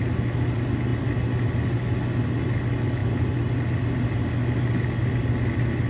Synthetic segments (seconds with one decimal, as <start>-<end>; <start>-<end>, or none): none